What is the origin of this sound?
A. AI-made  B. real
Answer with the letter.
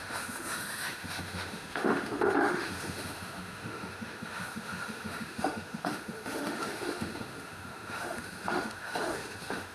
A